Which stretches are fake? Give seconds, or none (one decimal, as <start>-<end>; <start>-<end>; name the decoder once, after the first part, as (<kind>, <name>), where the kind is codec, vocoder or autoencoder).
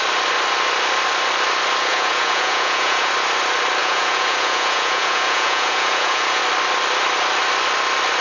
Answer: 1.9-3.1 (vocoder, Vocos); 3.8-6.4